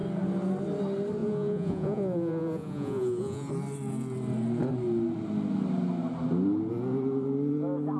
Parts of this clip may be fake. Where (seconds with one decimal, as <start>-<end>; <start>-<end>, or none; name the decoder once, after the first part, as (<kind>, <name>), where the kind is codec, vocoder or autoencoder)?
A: 1.2-3.5 (vocoder, Vocos)